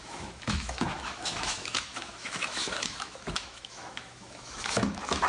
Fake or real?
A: fake